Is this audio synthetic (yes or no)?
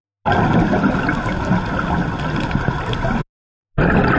no